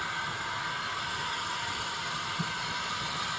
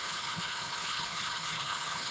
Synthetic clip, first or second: second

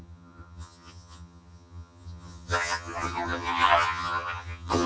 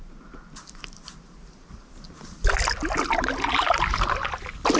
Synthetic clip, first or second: first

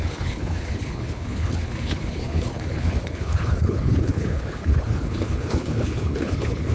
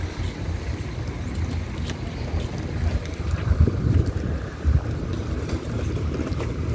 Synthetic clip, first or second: first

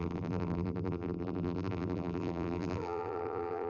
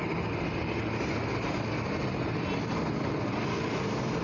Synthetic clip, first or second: first